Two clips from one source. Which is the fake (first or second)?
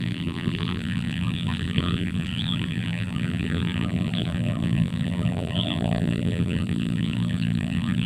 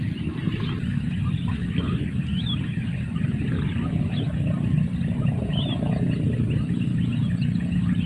first